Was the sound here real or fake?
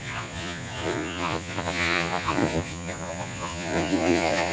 fake